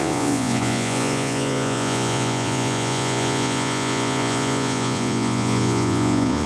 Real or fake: fake